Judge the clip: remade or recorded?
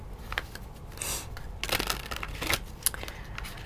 recorded